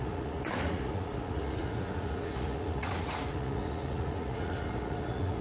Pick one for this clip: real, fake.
fake